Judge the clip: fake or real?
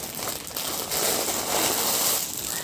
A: real